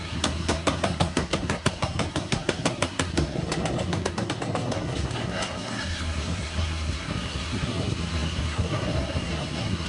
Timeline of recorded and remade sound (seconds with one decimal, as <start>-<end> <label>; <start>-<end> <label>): 0.0-9.9 remade